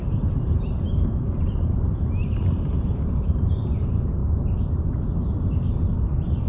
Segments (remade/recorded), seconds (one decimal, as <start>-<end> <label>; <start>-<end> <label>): 0.0-4.2 remade; 4.2-6.5 recorded